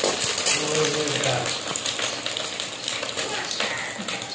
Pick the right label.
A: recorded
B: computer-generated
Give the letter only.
A